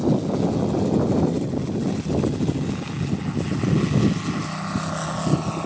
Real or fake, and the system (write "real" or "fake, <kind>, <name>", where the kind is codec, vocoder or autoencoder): real